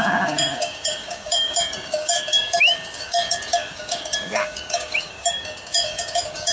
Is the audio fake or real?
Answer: fake